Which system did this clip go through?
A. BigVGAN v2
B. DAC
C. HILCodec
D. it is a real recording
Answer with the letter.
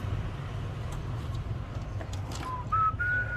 D